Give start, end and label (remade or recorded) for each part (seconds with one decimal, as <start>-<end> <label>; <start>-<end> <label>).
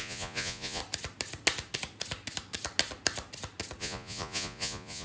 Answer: 0.0-0.8 remade; 0.8-3.8 recorded; 3.8-5.0 remade